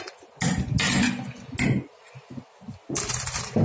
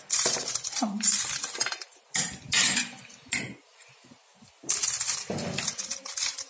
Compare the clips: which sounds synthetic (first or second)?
second